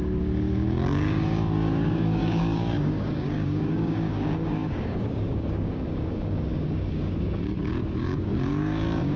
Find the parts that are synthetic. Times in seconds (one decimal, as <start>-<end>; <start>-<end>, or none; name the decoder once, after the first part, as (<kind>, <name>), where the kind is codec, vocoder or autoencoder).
0.0-9.2 (codec, DAC)